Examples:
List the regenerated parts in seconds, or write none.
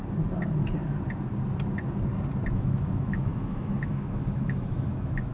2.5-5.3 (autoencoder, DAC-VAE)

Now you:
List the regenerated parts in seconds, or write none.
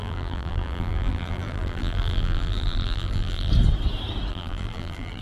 0.0-3.5 (vocoder, BigVGAN v2); 4.3-5.2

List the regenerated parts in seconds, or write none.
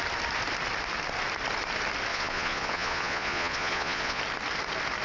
2.1-4.2 (vocoder, Vocos)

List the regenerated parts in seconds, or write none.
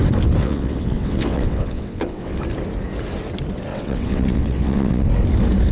0.4-2.4 (vocoder, WaveNeXt); 3.7-5.1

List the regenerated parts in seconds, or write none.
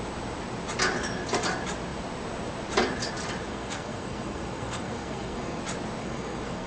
3.5-5.6 (codec, SNAC); 6.0-6.7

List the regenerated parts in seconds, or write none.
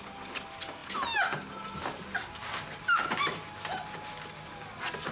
none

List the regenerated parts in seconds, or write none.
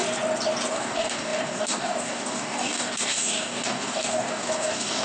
0.7-5.0 (codec, DAC)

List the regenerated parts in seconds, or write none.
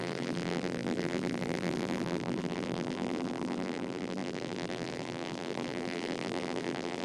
0.0-7.0 (vocoder, BigVGAN v2)